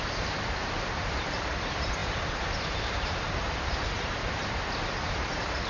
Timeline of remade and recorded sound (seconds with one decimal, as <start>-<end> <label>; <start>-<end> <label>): 0.0-5.7 remade